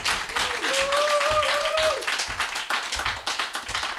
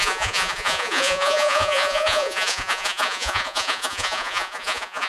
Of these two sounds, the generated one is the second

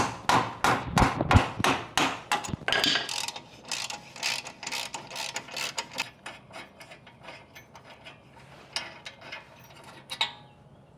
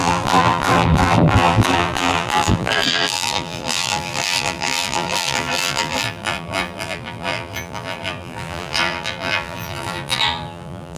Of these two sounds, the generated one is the second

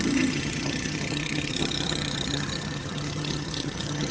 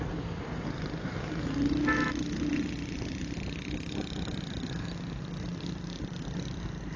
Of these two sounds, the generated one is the first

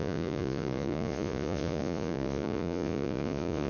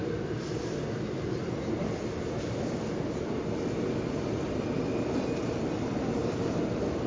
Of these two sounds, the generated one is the first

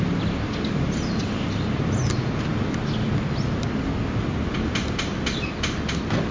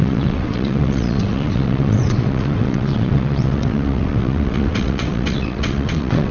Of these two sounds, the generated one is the second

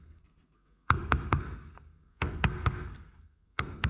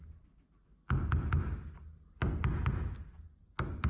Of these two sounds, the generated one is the first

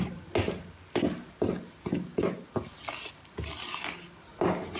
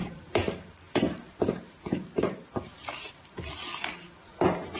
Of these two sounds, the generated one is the second